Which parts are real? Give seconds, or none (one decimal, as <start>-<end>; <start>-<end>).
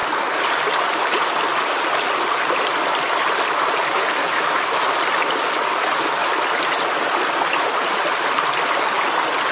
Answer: 0.0-4.2; 4.9-9.5